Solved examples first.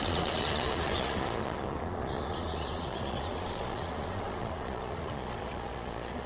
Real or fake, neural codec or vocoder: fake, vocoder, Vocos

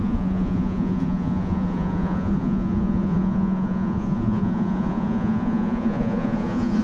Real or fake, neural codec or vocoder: fake, vocoder, Vocos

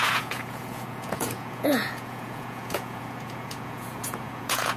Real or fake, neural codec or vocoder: fake, vocoder, Vocos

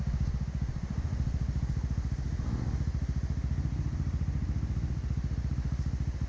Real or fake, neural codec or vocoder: real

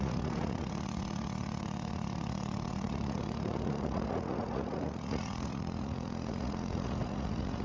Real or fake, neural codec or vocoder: fake, vocoder, Vocos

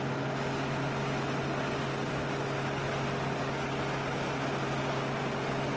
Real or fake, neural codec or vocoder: real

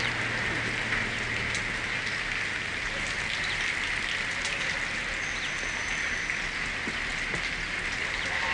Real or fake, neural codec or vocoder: real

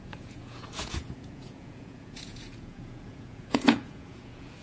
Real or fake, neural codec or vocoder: fake, vocoder, Vocos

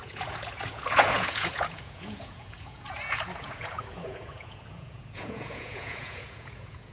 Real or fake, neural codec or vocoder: fake, vocoder, Vocos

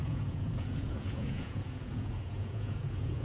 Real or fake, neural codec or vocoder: fake, vocoder, Vocos